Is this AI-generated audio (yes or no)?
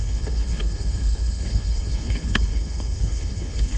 yes